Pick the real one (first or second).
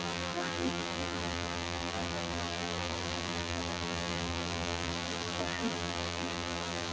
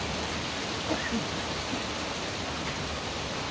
second